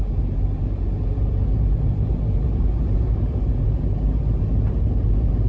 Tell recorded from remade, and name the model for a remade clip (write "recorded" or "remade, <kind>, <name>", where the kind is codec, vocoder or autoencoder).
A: remade, vocoder, BigVGAN v2